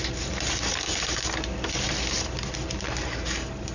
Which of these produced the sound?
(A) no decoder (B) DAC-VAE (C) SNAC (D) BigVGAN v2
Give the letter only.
A